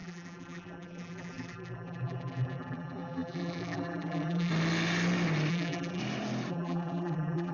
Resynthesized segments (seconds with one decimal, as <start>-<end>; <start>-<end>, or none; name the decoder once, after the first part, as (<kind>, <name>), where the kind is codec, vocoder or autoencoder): 0.0-4.5 (vocoder, BigVGAN v2); 5.5-6.0; 6.5-7.5